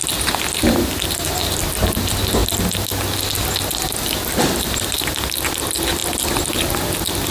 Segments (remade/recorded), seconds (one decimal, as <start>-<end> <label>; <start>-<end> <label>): 0.0-7.3 recorded